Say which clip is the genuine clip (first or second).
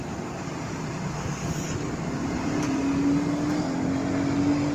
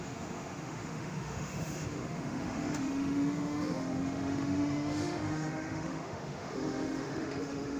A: first